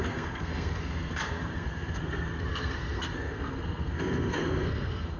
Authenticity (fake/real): fake